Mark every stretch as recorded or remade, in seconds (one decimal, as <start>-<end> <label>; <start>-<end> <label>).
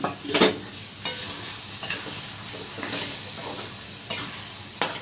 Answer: 0.0-5.0 recorded